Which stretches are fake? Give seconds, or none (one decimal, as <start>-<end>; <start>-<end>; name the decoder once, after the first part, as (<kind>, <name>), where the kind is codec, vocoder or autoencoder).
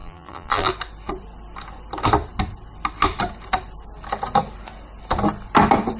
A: 0.0-0.7 (vocoder, BigVGAN v2)